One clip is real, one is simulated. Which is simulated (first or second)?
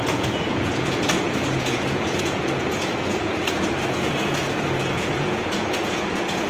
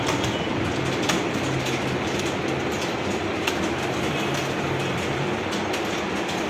first